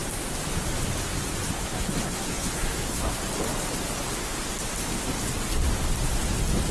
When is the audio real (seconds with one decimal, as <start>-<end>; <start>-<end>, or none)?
0.0-1.5; 3.2-6.7